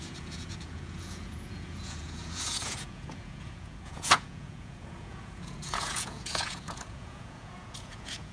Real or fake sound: fake